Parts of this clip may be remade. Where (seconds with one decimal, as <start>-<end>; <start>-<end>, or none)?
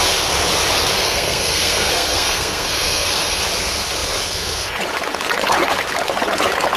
1.0-3.4